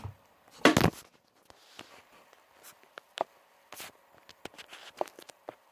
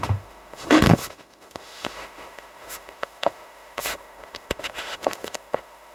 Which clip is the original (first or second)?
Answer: first